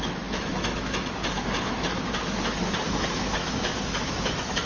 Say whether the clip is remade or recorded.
remade